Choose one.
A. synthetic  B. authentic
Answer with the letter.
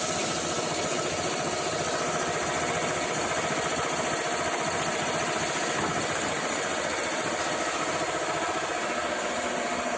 B